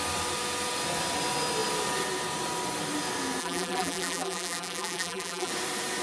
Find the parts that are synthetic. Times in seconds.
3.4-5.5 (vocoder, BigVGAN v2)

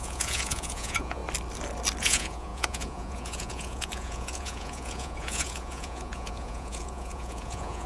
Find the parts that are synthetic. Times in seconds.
0.0-1.2 (vocoder, Vocos); 2.0-7.9